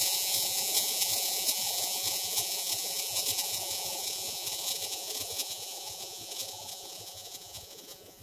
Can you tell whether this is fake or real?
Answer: fake